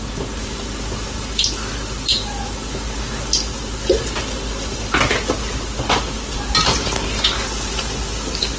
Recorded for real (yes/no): yes